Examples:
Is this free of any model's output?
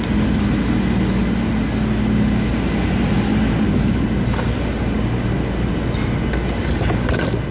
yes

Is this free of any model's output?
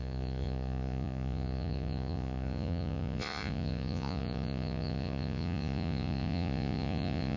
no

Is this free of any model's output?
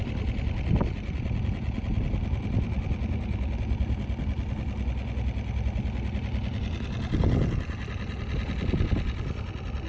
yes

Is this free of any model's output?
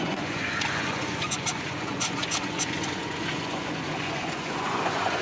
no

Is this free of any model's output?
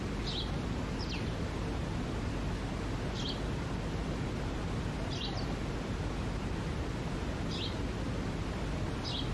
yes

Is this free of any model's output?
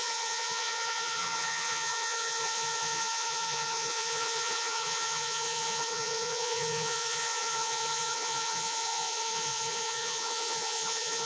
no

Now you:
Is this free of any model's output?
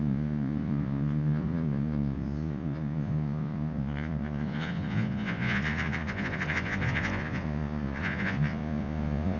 no